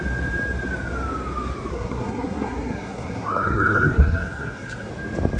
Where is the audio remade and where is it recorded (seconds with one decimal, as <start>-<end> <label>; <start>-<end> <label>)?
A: 0.0-1.7 recorded; 1.7-4.9 remade; 4.9-5.4 recorded